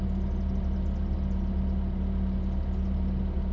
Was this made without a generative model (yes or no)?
yes